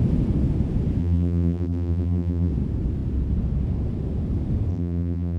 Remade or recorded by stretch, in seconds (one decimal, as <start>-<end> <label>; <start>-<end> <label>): 0.0-1.0 recorded; 1.0-2.5 remade; 2.5-4.7 recorded; 4.7-5.4 remade